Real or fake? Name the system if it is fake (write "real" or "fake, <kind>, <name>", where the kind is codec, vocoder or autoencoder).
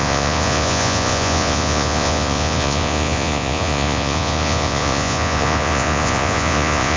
fake, vocoder, Vocos